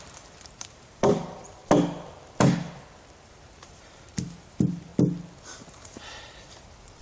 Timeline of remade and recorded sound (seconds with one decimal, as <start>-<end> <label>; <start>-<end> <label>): 0.0-1.6 remade; 1.6-3.2 recorded; 3.2-4.9 remade; 4.9-5.7 recorded; 5.7-7.0 remade